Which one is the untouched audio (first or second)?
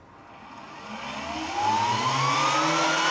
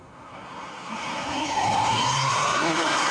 first